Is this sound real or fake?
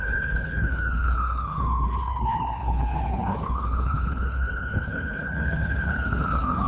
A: fake